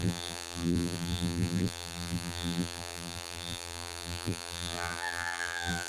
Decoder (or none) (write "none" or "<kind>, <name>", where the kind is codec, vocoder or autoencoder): vocoder, BigVGAN v2